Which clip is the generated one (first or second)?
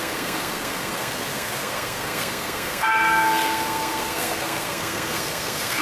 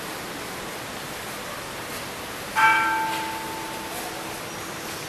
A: first